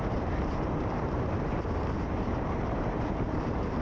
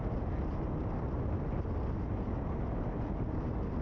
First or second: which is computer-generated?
first